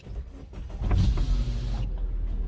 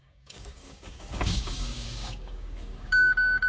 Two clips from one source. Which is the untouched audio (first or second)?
first